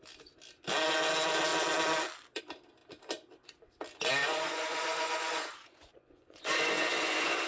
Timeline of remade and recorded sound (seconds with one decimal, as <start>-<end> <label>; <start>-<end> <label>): 0.0-4.2 recorded; 4.2-7.5 remade